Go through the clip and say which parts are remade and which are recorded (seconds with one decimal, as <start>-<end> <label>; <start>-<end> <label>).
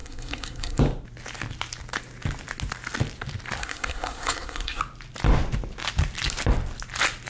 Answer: 0.0-0.8 remade; 0.8-3.6 recorded; 3.6-4.8 remade; 4.8-7.3 recorded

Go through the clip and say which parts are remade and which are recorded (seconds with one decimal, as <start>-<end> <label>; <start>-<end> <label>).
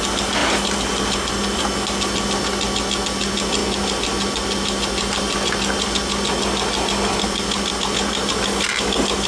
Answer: 0.0-0.4 recorded; 0.4-1.6 remade; 1.6-3.6 recorded; 3.6-7.7 remade; 7.7-9.3 recorded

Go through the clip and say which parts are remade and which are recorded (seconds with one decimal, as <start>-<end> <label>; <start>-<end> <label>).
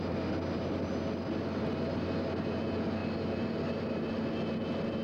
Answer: 0.0-5.0 recorded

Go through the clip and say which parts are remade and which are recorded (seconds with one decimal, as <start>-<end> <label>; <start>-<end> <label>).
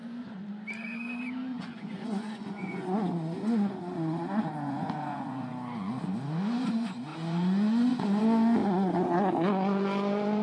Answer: 0.0-1.5 recorded; 1.5-5.9 remade; 5.9-7.1 recorded; 7.1-8.2 remade; 8.2-8.6 recorded; 8.6-9.1 remade; 9.1-10.4 recorded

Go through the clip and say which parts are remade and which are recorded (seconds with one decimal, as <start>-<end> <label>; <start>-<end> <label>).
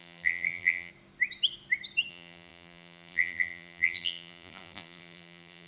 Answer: 0.0-0.9 remade; 0.9-2.1 recorded; 2.1-5.7 remade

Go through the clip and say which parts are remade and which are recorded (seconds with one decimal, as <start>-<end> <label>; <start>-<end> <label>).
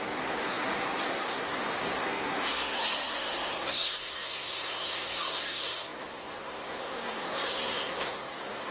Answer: 0.0-8.7 remade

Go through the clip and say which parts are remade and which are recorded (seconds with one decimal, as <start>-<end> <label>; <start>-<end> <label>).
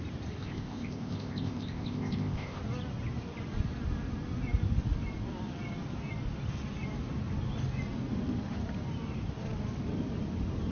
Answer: 0.0-0.4 recorded; 0.4-2.6 remade; 2.6-10.7 recorded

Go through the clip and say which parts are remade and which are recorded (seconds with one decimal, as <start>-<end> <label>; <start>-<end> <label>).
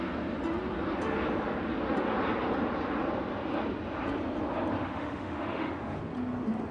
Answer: 0.0-4.8 recorded; 4.8-6.0 remade; 6.0-6.7 recorded